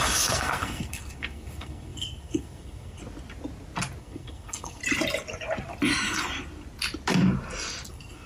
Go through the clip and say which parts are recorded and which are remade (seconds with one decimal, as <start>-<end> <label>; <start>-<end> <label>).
0.0-3.0 remade; 3.0-4.0 recorded; 4.0-4.8 remade; 4.8-7.9 recorded; 7.9-8.3 remade